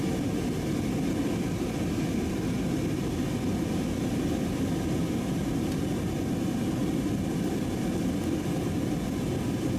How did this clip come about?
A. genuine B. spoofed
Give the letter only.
A